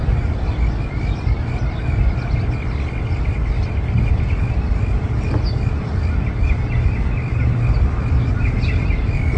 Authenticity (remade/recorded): recorded